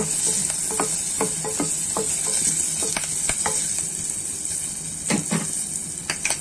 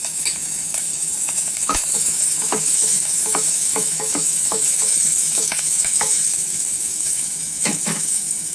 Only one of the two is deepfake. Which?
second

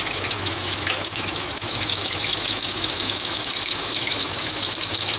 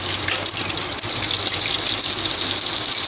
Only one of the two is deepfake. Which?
first